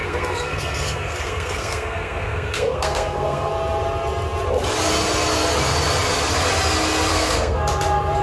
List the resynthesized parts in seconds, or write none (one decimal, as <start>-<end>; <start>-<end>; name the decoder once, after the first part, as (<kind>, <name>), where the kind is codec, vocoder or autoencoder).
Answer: 0.0-3.5 (codec, SNAC); 7.1-7.6

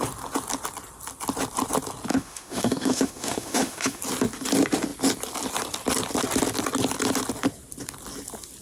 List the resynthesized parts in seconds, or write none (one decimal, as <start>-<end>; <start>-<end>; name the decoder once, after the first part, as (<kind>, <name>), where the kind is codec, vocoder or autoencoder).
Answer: 2.1-4.0 (autoencoder, DAC-VAE)